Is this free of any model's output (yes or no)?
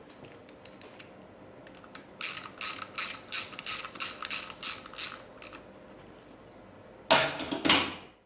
yes